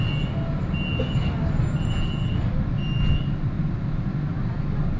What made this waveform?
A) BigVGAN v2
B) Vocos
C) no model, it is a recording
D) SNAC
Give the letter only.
C